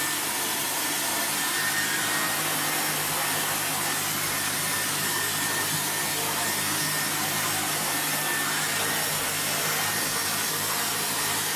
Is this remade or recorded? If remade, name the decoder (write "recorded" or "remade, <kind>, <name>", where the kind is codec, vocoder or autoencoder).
recorded